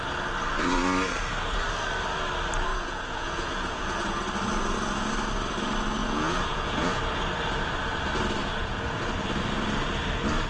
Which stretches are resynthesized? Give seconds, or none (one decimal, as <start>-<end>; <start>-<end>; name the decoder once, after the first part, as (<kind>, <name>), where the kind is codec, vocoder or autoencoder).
2.7-4.2 (vocoder, Vocos); 6.0-7.0; 8.4-9.0